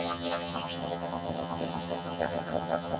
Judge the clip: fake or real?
fake